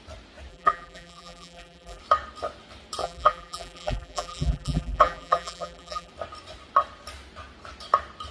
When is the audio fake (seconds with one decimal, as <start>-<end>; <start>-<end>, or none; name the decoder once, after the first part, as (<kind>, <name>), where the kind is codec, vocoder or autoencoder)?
0.5-2.0 (vocoder, BigVGAN v2); 3.0-6.1